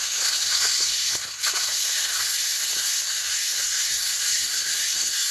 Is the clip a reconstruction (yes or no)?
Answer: yes